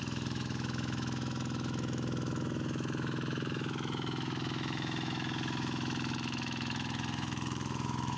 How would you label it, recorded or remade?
remade